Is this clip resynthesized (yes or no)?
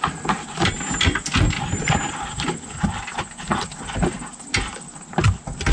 no